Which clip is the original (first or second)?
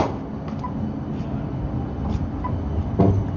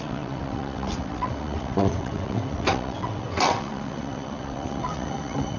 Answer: first